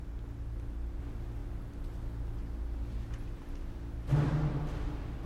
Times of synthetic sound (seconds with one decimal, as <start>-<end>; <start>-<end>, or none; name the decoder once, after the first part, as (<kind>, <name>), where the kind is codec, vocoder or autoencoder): none